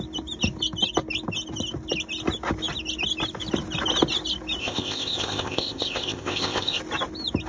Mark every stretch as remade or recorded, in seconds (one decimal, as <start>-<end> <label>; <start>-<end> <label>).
0.0-4.6 recorded; 4.6-6.8 remade; 6.8-7.5 recorded